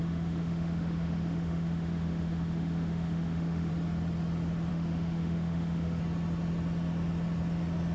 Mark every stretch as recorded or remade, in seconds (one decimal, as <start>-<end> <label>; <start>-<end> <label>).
0.0-3.7 remade; 3.7-4.7 recorded; 4.7-6.0 remade; 6.0-7.9 recorded

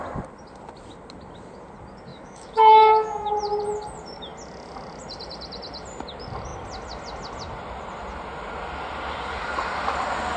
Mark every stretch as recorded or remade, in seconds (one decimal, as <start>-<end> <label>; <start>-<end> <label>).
0.0-2.1 recorded; 2.1-3.3 remade; 3.3-10.4 recorded